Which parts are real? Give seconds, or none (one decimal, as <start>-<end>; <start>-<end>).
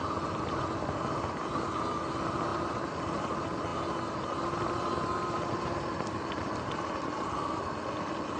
0.0-8.4